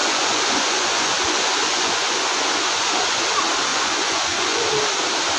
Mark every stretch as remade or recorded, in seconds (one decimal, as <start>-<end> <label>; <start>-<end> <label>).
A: 0.0-3.2 remade; 3.2-3.7 recorded; 3.7-4.7 remade; 4.7-5.4 recorded